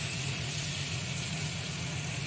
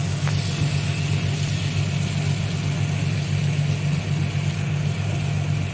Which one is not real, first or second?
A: first